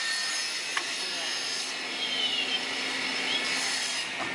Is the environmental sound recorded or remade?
remade